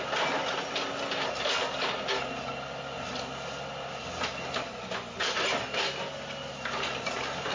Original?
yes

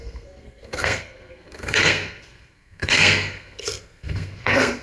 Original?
no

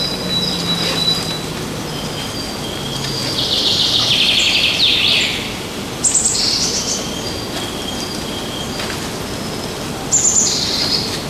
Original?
yes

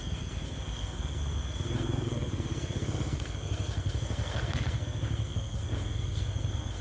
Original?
no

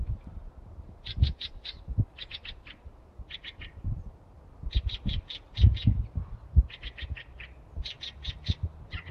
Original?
yes